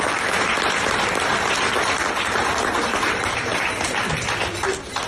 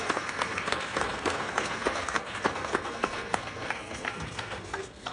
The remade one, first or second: second